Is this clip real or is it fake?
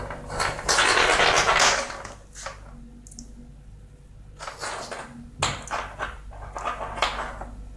real